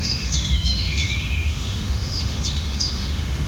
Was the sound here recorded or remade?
remade